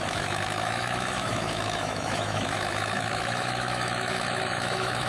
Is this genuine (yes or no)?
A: no